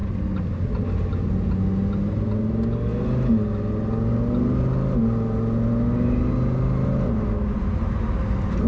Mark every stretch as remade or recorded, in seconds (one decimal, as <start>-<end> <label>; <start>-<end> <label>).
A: 0.0-8.7 recorded